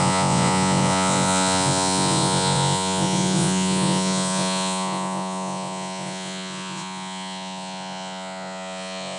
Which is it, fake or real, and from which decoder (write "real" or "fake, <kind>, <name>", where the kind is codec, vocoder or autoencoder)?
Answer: fake, vocoder, Vocos